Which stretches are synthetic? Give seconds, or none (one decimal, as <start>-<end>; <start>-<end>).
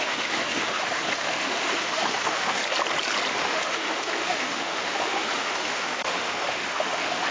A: 0.0-2.6; 3.3-7.3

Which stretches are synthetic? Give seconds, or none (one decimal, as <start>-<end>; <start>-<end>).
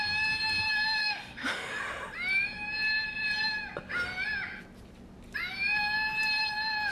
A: 1.0-1.8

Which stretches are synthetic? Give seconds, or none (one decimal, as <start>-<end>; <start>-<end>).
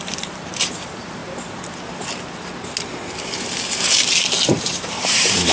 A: 0.0-1.2; 4.5-5.5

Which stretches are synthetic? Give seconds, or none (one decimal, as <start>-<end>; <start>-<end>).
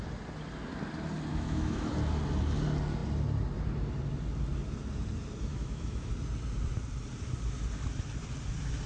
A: 1.3-1.9; 5.5-6.1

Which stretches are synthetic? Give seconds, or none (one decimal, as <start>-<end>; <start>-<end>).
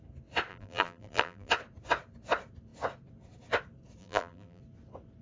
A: 0.5-1.5; 4.0-4.6